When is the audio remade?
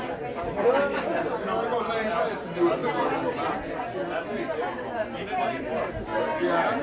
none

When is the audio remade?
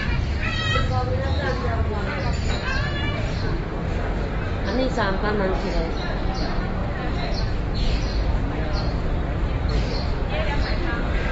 8.1-10.3 (vocoder, BigVGAN v2)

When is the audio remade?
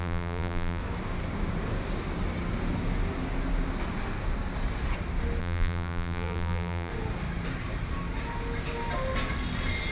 0.0-0.8 (vocoder, BigVGAN v2); 5.4-6.9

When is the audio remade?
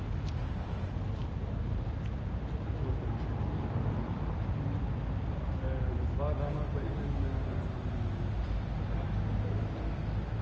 1.2-2.8 (vocoder, BigVGAN v2)